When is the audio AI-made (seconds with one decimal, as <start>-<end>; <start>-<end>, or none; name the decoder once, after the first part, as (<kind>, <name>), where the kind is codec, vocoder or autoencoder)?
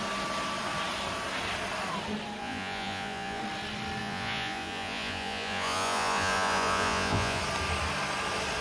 2.4-3.4 (vocoder, Vocos); 4.0-7.4